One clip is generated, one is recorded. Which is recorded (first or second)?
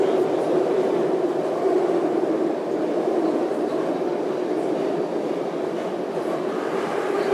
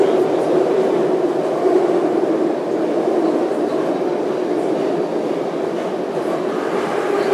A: second